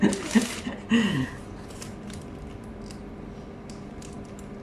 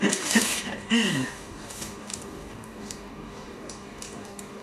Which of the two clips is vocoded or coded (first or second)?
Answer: second